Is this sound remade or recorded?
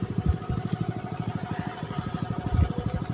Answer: recorded